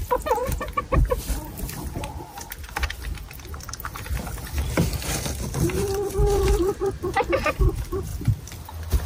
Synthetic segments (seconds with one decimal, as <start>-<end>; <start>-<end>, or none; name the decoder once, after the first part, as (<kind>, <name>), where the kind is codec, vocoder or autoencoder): 0.0-0.4 (vocoder, BigVGAN v2); 1.3-8.1